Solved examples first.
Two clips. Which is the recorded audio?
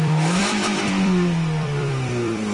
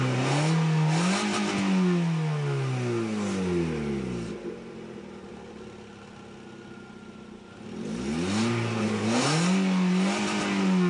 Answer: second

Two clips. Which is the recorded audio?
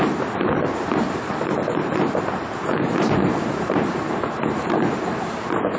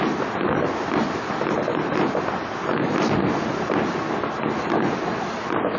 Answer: second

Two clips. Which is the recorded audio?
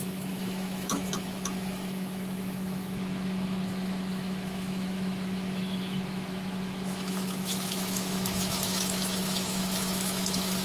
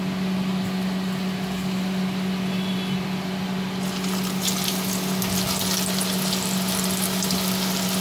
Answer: second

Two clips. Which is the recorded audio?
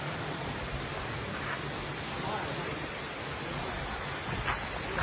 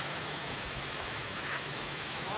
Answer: first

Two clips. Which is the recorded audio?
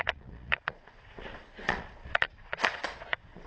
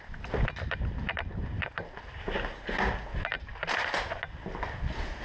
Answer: second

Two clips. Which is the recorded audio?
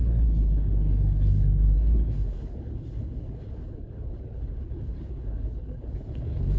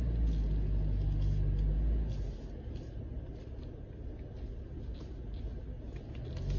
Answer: second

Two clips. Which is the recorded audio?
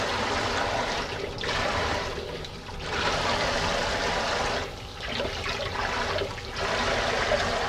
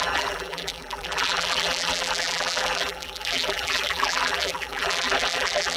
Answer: first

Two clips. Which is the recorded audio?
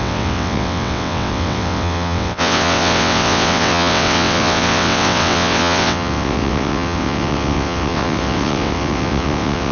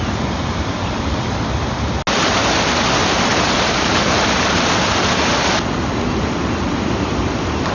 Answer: second